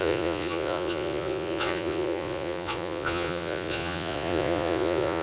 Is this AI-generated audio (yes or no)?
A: yes